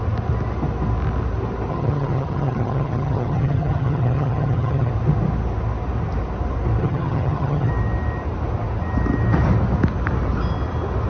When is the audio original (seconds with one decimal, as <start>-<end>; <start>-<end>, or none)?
0.0-1.7; 4.9-6.8; 7.7-11.1